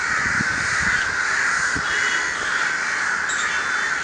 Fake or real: real